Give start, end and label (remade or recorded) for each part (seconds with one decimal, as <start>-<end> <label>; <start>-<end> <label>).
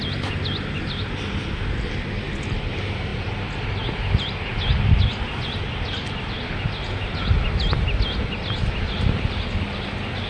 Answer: 0.0-10.3 recorded